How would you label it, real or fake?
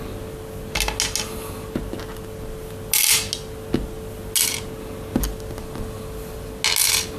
real